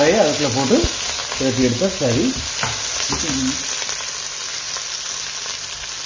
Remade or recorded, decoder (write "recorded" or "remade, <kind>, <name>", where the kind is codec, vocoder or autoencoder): recorded